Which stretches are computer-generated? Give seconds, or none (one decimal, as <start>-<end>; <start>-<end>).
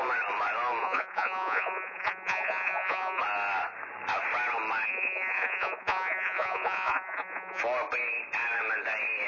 0.8-3.2; 4.9-7.6